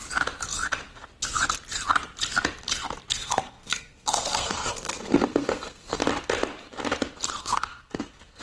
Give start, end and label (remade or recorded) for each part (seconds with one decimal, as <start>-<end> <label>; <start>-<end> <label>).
0.0-3.1 recorded; 3.1-6.0 remade; 6.0-7.4 recorded; 7.4-8.4 remade